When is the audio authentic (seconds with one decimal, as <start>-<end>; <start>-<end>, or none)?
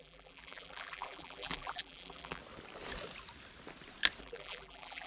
2.4-4.2